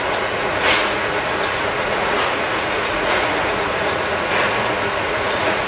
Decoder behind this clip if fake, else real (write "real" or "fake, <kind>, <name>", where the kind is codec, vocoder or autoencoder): fake, vocoder, Vocos